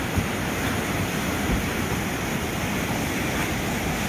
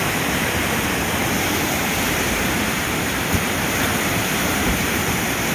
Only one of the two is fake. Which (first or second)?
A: second